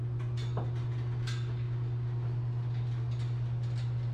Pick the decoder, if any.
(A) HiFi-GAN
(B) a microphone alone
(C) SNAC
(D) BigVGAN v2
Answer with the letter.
B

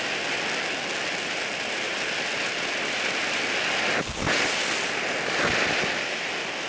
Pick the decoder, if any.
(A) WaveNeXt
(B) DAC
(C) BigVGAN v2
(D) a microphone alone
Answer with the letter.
D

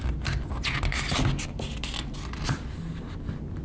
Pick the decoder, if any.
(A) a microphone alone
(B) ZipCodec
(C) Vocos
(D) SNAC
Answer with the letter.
A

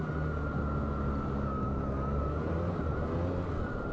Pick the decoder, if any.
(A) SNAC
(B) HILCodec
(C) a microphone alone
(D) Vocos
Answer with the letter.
C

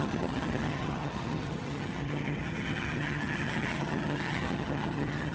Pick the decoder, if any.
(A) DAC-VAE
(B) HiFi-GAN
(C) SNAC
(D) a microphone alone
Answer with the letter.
B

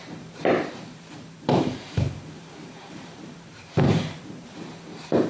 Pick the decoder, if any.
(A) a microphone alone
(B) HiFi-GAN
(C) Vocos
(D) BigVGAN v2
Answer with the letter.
D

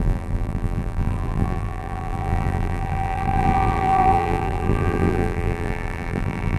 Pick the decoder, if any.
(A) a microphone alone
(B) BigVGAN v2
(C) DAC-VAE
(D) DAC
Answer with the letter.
B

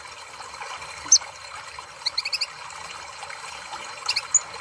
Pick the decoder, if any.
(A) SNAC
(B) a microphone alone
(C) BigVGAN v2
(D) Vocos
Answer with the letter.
B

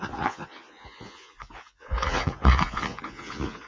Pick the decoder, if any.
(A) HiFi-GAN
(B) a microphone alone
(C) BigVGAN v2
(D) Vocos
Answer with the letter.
D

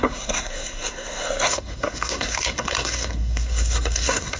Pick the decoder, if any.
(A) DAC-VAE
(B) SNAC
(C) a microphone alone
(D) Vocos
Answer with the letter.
B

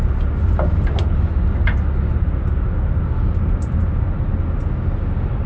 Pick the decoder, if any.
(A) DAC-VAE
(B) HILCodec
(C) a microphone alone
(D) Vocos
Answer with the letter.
C